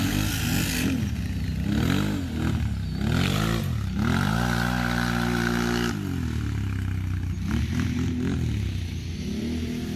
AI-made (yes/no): no